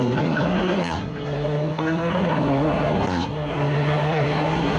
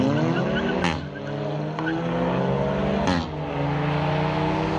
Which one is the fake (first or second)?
first